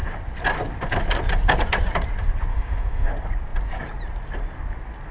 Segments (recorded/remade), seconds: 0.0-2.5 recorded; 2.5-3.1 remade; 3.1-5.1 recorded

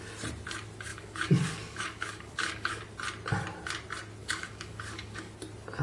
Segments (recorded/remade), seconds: 0.0-0.9 recorded; 0.9-2.8 remade; 2.8-4.2 recorded; 4.2-5.3 remade; 5.3-5.8 recorded

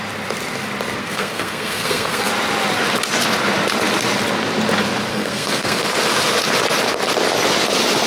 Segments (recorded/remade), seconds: 0.0-1.0 recorded; 1.0-2.3 remade; 2.3-5.1 recorded; 5.1-5.8 remade; 5.8-8.1 recorded

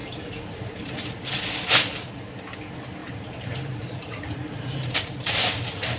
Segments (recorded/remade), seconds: 0.0-1.1 remade; 1.1-3.0 recorded; 3.0-5.0 remade; 5.0-6.0 recorded

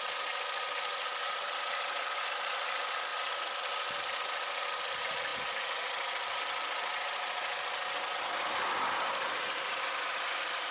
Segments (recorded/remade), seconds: 0.0-10.7 recorded